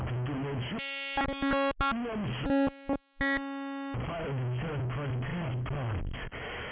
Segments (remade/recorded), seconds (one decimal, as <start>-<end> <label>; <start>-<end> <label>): 0.0-6.7 recorded